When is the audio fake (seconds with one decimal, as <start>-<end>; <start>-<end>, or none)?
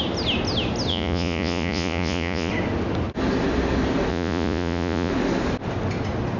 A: 0.9-2.5; 4.1-5.1